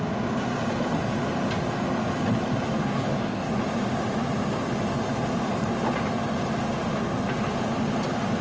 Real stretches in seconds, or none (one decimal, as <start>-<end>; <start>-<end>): 0.0-2.8; 3.5-8.4